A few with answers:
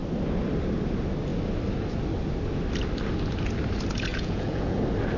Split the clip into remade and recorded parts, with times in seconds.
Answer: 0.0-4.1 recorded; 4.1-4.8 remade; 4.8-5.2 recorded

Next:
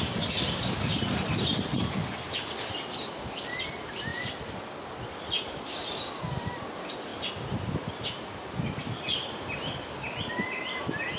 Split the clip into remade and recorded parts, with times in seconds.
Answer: 0.0-11.2 recorded

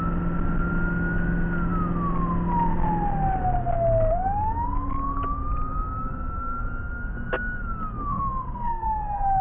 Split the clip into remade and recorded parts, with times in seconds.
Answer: 0.0-8.1 recorded; 8.1-9.4 remade

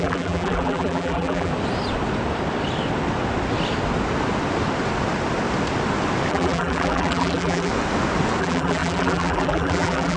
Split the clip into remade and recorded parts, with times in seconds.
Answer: 0.0-1.5 remade; 1.5-6.3 recorded; 6.3-7.7 remade; 7.7-8.4 recorded; 8.4-10.2 remade

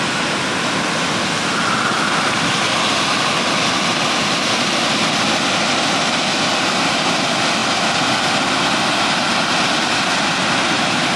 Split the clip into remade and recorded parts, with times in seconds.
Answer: 0.0-11.2 recorded

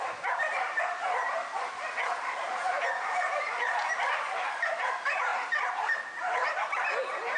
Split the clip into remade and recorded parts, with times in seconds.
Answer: 0.0-7.4 recorded

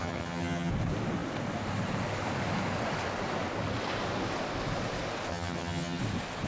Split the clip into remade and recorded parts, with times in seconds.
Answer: 0.0-0.7 remade; 0.7-5.3 recorded; 5.3-6.0 remade; 6.0-6.5 recorded